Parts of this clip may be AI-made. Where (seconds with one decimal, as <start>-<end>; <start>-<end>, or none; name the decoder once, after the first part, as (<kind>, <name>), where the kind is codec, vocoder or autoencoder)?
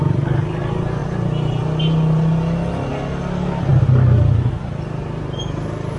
none